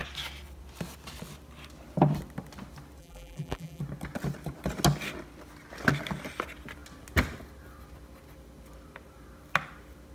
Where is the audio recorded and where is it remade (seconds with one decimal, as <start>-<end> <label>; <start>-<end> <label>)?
0.0-3.0 recorded; 3.0-3.8 remade; 3.8-10.1 recorded